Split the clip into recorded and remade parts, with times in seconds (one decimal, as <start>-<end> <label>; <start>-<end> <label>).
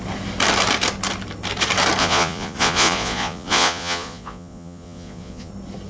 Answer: 0.0-2.0 recorded; 2.0-5.5 remade; 5.5-5.9 recorded